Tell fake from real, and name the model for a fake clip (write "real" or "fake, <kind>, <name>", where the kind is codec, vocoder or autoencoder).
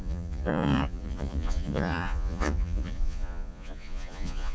fake, vocoder, Vocos